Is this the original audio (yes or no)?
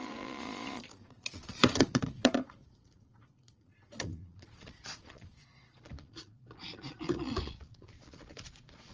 no